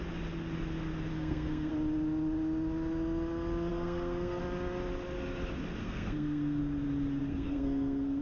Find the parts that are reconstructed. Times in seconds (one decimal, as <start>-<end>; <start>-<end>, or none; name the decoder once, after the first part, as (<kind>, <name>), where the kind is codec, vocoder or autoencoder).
1.1-1.7 (codec, SNAC); 3.7-4.4; 5.8-6.6; 7.2-8.2